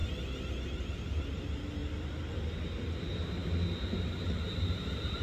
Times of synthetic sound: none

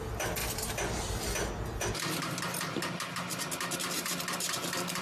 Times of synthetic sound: none

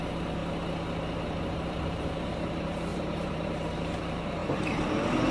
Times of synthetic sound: 0.0-0.4; 1.1-4.4

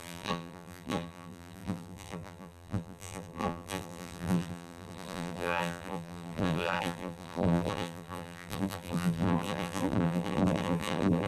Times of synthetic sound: 0.0-11.3

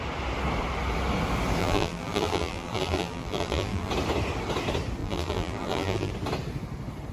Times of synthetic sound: 1.6-3.9; 5.0-6.1